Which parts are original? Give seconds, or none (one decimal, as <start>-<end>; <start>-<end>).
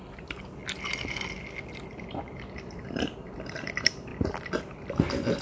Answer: 0.6-2.0; 4.1-4.6